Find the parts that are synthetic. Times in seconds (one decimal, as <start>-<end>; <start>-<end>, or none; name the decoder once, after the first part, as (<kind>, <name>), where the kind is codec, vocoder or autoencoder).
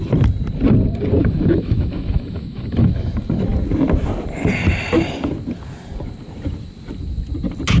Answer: 1.2-3.1 (autoencoder, DAC-VAE)